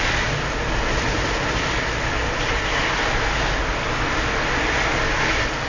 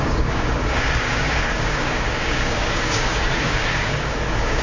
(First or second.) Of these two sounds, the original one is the first